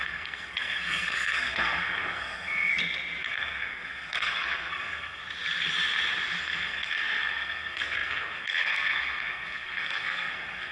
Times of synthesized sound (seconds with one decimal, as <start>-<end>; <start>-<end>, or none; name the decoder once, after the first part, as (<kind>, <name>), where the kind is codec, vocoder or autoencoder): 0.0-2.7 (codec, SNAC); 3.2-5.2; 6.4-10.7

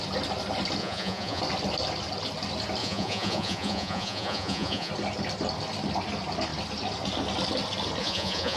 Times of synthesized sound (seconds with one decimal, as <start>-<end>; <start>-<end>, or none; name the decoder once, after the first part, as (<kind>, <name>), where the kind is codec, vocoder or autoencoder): 0.8-1.4 (vocoder, Vocos); 2.8-4.9; 8.0-8.6

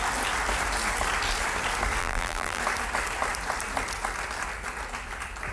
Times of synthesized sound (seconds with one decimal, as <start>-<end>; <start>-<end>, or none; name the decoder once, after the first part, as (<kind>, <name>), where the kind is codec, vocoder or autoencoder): 2.0-2.6 (vocoder, BigVGAN v2)

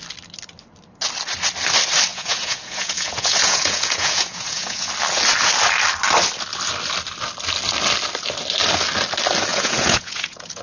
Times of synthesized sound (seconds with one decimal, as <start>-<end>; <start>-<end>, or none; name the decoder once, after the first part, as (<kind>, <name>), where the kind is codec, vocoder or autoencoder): 2.1-4.9 (vocoder, Vocos); 9.5-10.6

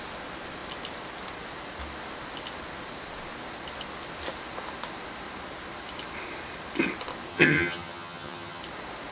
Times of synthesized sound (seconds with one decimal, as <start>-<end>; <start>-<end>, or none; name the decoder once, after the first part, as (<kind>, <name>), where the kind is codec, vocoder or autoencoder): 7.3-8.6 (vocoder, HiFi-GAN)

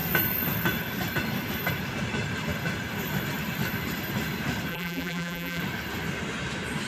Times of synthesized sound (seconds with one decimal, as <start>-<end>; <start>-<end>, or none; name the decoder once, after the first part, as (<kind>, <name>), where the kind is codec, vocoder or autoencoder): 4.7-5.6 (vocoder, BigVGAN v2)